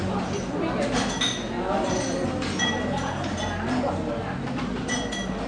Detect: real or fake real